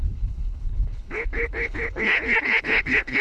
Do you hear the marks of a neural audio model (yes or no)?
yes